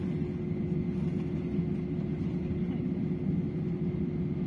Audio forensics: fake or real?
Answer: real